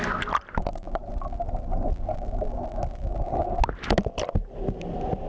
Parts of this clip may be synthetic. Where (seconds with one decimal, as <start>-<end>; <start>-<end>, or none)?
none